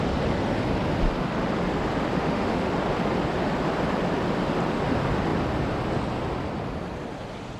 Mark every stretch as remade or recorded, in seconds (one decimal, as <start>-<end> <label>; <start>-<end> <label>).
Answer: 0.0-2.1 recorded; 2.1-2.7 remade; 2.7-7.6 recorded